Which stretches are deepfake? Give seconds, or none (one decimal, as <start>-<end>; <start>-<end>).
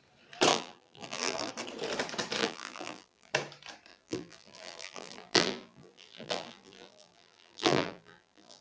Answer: 0.5-1.5; 2.4-3.3; 3.9-8.6